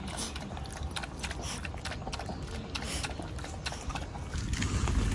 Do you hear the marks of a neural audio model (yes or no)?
no